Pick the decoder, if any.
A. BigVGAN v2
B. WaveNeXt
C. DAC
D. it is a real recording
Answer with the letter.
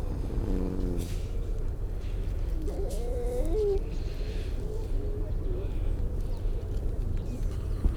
D